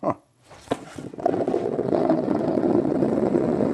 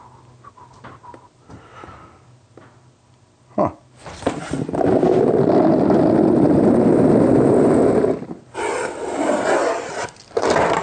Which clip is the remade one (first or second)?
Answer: first